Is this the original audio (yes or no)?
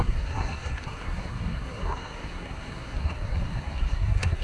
no